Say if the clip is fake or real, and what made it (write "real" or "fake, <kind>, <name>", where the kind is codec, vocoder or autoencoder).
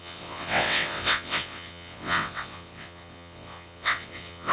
fake, vocoder, WaveNeXt